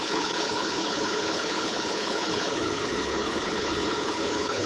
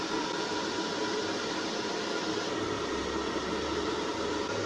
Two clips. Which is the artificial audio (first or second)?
first